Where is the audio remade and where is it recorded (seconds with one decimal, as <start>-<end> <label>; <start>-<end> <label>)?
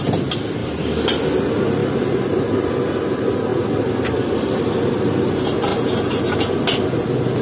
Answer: 0.0-0.6 recorded; 0.6-1.2 remade; 1.2-1.8 recorded; 1.8-2.7 remade; 2.7-3.5 recorded; 3.5-5.0 remade; 5.0-5.7 recorded; 5.7-6.3 remade; 6.3-7.4 recorded